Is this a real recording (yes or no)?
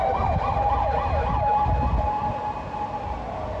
yes